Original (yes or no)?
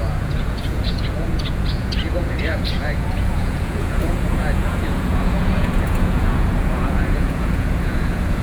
no